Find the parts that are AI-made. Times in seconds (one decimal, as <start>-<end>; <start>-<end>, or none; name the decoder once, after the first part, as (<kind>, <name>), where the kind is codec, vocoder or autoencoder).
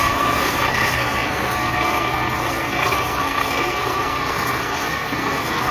0.0-5.7 (codec, SNAC)